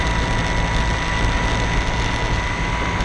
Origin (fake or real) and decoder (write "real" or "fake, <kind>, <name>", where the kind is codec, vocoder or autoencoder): real